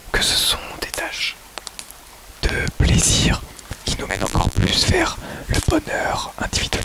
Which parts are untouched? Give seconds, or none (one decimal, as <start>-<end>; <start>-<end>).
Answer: 0.0-4.1; 4.7-6.8